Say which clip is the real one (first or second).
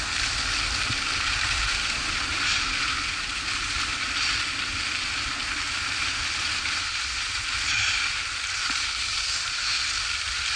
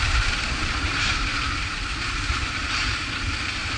first